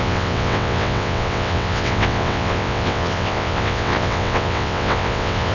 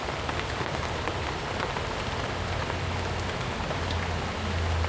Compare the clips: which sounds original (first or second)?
second